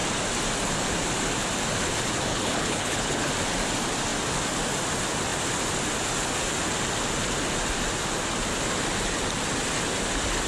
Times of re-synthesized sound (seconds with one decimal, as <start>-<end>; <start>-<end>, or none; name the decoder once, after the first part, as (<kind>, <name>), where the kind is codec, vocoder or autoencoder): 2.3-3.3 (codec, HILCodec)